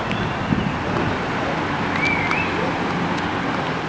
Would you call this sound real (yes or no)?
yes